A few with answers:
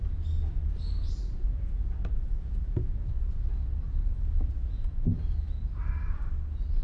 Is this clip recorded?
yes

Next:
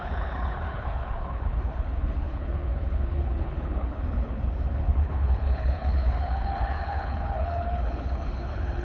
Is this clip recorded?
no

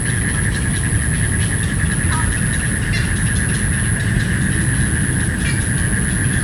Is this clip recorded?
yes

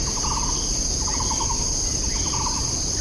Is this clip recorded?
yes